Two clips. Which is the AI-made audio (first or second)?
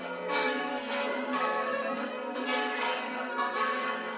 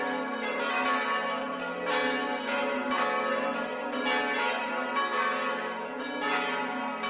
first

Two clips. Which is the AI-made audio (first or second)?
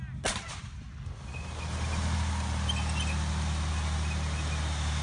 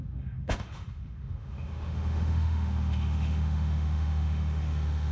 second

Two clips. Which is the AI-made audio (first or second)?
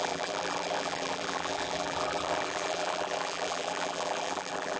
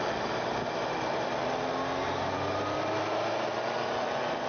first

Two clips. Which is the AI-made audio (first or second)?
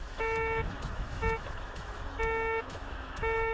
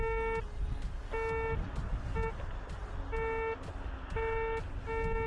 first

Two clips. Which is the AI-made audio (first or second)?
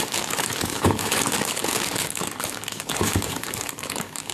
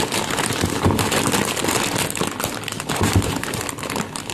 first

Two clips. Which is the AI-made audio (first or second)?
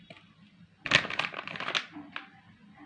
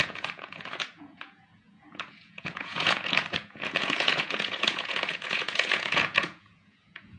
second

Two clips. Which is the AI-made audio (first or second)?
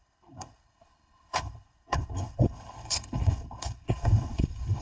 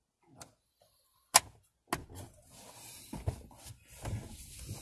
first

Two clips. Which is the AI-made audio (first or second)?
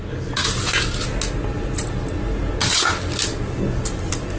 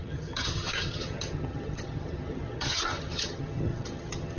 second